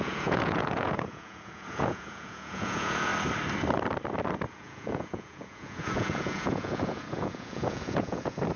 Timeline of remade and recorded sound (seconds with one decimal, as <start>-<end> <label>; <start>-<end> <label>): 0.0-3.1 remade; 3.1-4.5 recorded; 4.5-8.6 remade